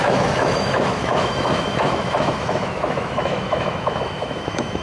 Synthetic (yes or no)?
yes